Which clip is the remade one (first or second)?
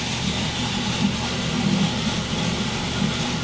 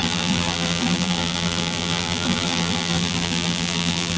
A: second